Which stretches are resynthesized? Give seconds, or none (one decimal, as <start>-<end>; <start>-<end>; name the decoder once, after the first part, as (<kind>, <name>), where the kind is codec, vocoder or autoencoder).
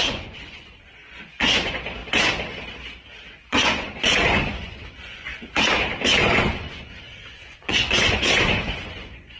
0.0-2.0 (vocoder, Vocos); 3.5-5.3; 6.2-9.4